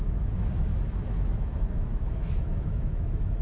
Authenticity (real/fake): fake